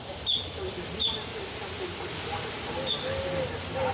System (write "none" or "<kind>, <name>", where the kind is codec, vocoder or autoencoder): none